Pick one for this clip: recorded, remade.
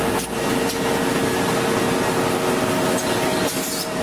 recorded